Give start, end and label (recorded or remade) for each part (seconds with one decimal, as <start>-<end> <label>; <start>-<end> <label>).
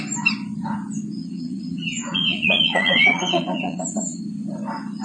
0.0-1.2 recorded; 1.2-4.2 remade; 4.2-5.0 recorded